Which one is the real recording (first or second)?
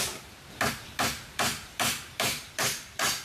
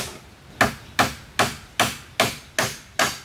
second